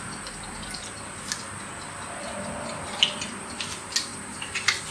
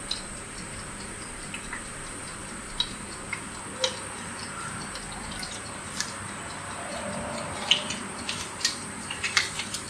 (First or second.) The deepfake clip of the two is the second